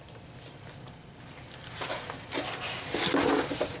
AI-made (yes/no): no